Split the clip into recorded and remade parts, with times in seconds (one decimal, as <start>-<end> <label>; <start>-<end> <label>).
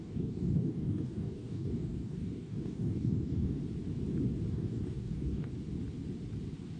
0.0-3.6 remade; 3.6-4.5 recorded; 4.5-5.5 remade; 5.5-6.8 recorded